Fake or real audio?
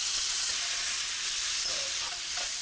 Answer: fake